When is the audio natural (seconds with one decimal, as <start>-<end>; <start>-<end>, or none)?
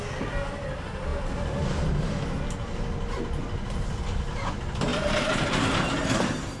0.0-6.6